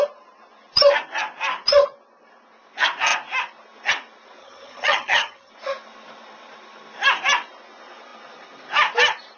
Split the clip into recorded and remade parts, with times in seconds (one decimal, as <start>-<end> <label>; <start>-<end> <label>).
0.0-4.4 recorded; 4.4-5.5 remade; 5.5-9.4 recorded

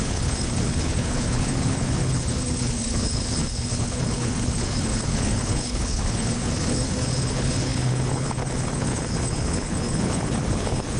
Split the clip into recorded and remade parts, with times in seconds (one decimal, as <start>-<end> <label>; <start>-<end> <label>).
0.0-11.0 remade

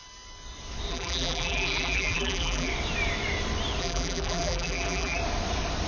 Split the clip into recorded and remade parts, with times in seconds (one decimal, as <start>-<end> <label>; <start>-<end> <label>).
0.0-0.9 recorded; 0.9-2.7 remade; 2.7-3.8 recorded; 3.8-5.2 remade; 5.2-5.9 recorded

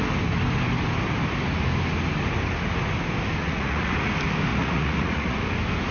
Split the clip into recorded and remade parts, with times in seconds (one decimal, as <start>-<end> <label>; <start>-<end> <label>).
0.0-3.4 recorded; 3.4-4.1 remade; 4.1-4.5 recorded; 4.5-5.4 remade; 5.4-5.9 recorded

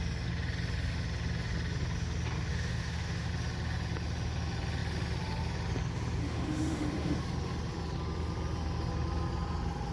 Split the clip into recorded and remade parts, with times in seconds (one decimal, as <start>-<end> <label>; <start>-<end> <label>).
0.0-2.5 recorded; 2.5-3.3 remade; 3.3-6.2 recorded; 6.2-7.2 remade; 7.2-9.9 recorded

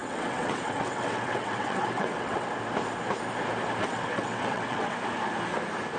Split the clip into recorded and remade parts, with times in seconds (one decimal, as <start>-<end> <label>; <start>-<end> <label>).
0.0-2.5 remade; 2.5-3.8 recorded; 3.8-4.9 remade; 4.9-6.0 recorded

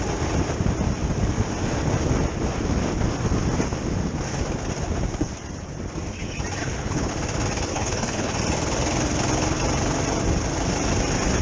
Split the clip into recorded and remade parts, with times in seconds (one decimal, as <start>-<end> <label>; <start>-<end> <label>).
0.0-6.6 recorded; 6.6-7.1 remade; 7.1-7.7 recorded; 7.7-8.4 remade; 8.4-11.4 recorded